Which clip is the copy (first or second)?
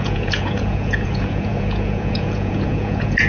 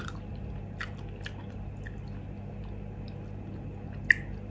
first